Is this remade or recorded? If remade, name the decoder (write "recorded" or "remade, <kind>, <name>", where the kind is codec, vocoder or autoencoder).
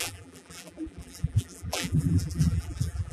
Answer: remade, vocoder, BigVGAN v2